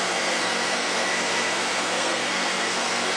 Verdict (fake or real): fake